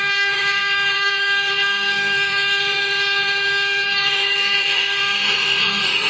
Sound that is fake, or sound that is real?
fake